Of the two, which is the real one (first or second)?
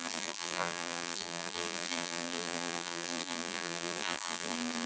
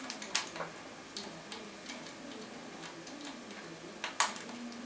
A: second